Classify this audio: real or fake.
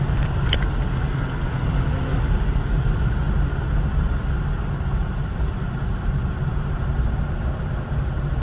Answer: real